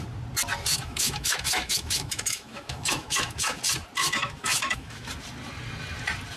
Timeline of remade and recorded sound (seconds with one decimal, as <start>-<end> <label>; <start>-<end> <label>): 0.0-0.7 recorded; 0.7-3.6 remade; 3.6-4.0 recorded; 4.0-5.1 remade; 5.1-6.4 recorded